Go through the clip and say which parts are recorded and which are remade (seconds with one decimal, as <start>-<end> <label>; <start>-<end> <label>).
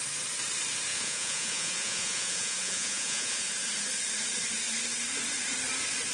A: 0.0-0.9 recorded; 0.9-3.5 remade; 3.5-6.1 recorded